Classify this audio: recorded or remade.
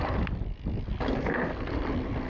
recorded